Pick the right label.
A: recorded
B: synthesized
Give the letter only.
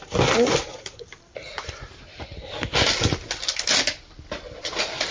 A